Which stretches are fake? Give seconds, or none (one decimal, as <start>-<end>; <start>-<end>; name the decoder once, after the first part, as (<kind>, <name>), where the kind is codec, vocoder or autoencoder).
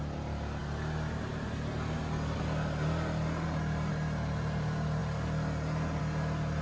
none